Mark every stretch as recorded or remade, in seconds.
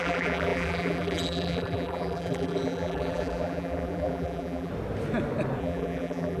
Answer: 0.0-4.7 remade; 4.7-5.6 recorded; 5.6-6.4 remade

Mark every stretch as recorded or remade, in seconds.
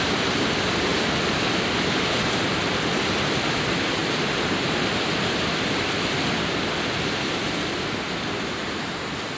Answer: 0.0-0.9 remade; 0.9-3.2 recorded; 3.2-9.4 remade